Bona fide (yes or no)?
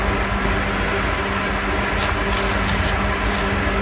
yes